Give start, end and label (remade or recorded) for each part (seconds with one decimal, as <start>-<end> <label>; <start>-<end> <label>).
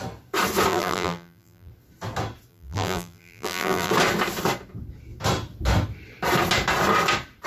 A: 0.0-0.7 recorded; 0.7-1.7 remade; 1.7-2.5 recorded; 2.5-3.9 remade; 3.9-7.5 recorded